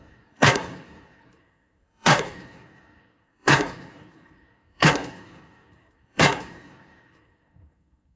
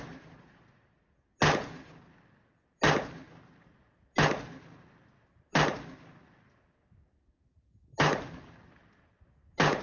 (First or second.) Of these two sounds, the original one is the second